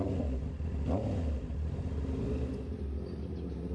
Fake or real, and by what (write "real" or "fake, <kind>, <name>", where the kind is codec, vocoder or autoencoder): real